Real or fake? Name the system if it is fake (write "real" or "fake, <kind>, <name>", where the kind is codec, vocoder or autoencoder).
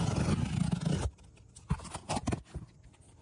real